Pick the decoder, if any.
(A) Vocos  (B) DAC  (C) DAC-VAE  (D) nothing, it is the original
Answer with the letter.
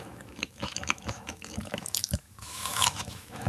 C